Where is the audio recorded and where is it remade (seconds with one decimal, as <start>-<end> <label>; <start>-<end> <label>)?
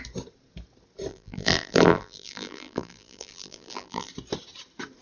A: 0.0-1.1 recorded; 1.1-4.1 remade; 4.1-5.0 recorded